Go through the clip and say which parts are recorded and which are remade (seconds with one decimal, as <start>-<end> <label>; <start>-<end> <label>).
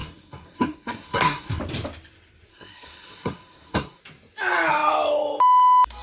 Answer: 0.0-1.6 remade; 1.6-2.5 recorded; 2.5-4.0 remade; 4.0-6.0 recorded